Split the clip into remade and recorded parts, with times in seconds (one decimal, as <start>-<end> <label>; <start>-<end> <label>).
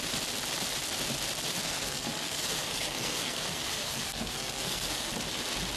0.0-1.6 recorded; 1.6-5.1 remade; 5.1-5.8 recorded